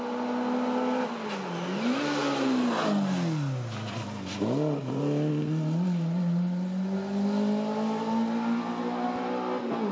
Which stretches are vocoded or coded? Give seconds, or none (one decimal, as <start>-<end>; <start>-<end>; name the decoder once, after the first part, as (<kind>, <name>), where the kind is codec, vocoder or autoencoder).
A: none